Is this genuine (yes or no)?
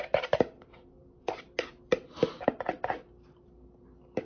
yes